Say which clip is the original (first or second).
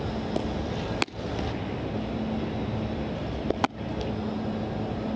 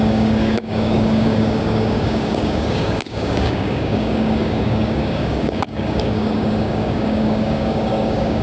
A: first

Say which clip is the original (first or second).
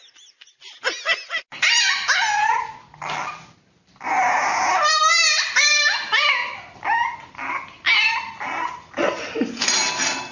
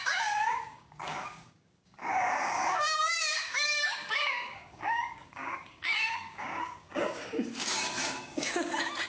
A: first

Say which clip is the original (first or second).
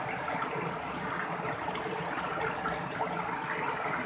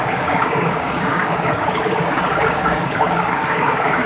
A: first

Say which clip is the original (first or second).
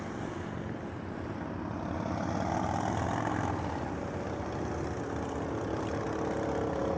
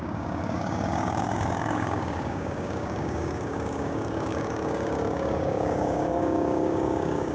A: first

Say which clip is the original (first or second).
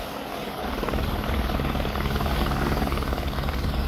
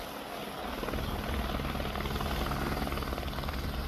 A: second